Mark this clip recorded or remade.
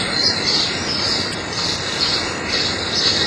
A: remade